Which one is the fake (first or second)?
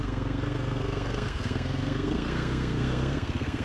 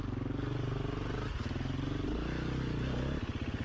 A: first